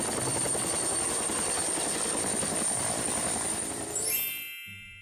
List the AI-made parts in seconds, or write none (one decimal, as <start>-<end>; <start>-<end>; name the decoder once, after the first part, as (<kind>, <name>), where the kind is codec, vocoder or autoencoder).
0.0-5.0 (vocoder, BigVGAN v2)